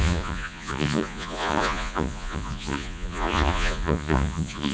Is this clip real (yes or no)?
no